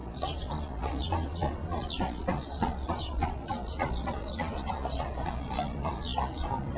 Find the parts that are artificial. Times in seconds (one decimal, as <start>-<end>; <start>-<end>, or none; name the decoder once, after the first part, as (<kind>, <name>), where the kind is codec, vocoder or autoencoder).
0.0-6.8 (vocoder, Vocos)